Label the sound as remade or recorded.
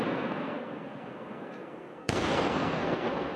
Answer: remade